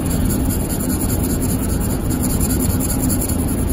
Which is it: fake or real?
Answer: real